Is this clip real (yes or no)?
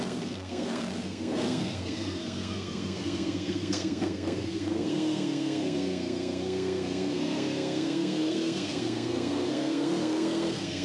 no